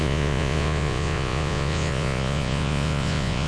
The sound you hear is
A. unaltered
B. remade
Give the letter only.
B